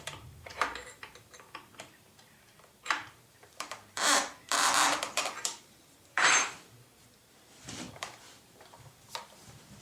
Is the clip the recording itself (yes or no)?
no